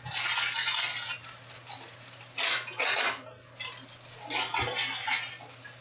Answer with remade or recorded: recorded